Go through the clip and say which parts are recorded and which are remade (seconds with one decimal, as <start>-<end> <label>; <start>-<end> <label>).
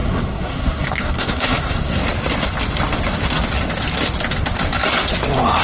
0.0-2.0 remade; 2.0-5.6 recorded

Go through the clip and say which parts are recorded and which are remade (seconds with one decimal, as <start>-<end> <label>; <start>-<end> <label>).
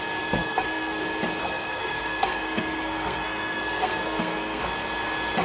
0.0-0.4 recorded; 0.4-1.0 remade; 1.0-1.4 recorded; 1.4-4.6 remade; 4.6-5.4 recorded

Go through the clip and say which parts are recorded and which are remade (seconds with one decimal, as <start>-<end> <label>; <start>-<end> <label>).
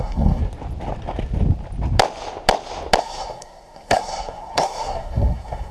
0.0-0.4 remade; 0.4-3.0 recorded; 3.0-5.7 remade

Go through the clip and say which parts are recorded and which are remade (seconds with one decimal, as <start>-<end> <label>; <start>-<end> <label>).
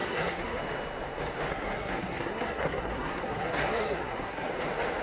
0.0-0.6 remade; 0.6-1.5 recorded; 1.5-4.5 remade; 4.5-5.0 recorded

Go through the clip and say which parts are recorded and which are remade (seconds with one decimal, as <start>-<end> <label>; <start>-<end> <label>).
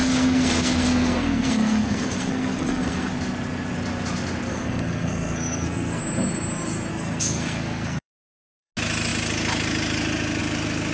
0.0-3.1 remade; 3.1-4.5 recorded; 4.5-6.0 remade; 6.0-6.9 recorded; 6.9-8.7 remade; 8.7-10.9 recorded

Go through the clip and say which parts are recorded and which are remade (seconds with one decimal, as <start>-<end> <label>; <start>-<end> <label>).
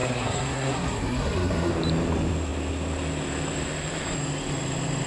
0.0-1.7 remade; 1.7-5.1 recorded